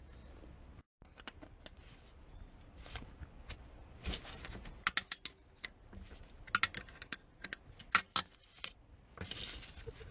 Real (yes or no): yes